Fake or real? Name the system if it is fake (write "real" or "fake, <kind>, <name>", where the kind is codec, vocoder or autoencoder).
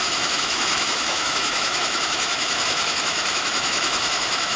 fake, autoencoder, DAC-VAE